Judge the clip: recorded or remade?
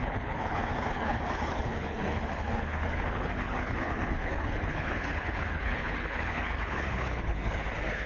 remade